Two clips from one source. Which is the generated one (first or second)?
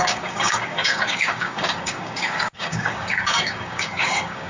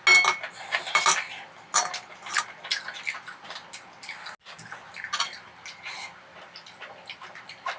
first